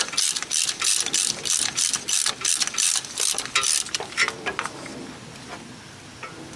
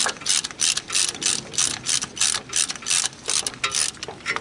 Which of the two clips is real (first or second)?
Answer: second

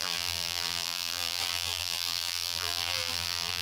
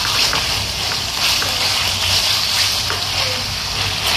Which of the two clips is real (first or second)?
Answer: second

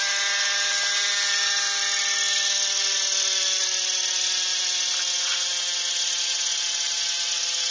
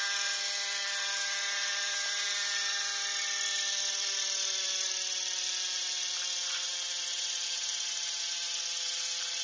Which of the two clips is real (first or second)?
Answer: first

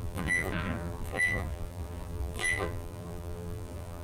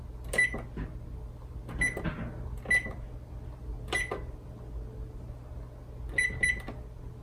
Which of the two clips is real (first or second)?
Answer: second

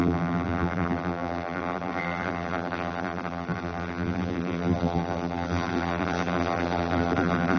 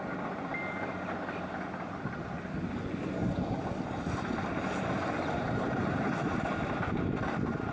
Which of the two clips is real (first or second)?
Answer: second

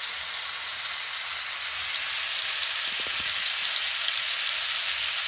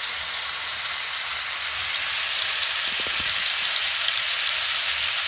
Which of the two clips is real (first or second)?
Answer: first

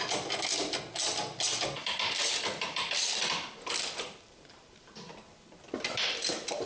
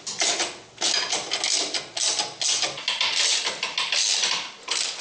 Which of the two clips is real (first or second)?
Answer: second